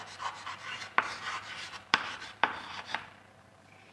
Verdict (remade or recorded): remade